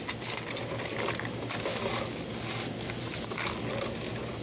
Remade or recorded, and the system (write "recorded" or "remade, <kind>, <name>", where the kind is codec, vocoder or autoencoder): recorded